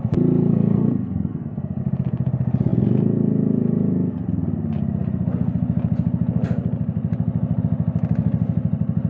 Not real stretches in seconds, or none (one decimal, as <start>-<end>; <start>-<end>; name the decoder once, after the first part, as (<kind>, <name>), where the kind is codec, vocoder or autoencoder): 0.5-1.8 (codec, SNAC)